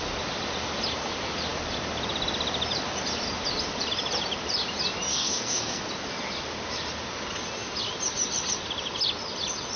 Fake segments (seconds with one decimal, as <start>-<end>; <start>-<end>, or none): 5.1-5.8